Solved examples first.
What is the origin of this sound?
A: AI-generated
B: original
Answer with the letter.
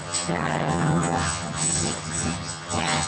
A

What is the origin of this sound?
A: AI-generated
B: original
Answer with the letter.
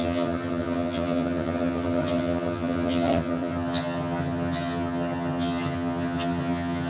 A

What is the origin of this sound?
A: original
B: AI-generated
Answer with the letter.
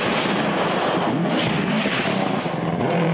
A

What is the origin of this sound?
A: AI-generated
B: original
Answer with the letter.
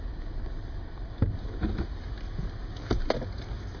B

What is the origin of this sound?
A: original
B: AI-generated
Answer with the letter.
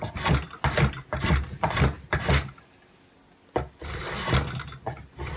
A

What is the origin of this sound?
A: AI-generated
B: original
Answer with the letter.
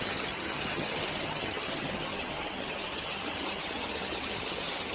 A